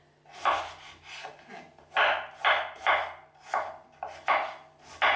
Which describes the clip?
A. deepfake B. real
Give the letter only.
B